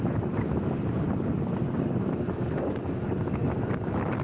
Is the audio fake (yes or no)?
no